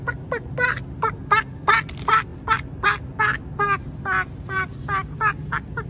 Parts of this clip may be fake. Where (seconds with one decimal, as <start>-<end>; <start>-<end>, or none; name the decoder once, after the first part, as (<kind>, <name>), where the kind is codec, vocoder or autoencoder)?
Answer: none